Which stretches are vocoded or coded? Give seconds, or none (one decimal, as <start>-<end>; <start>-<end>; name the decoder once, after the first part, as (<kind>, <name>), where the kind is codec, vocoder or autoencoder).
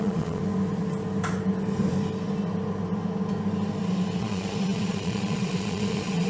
0.0-0.4 (vocoder, Vocos); 4.2-6.3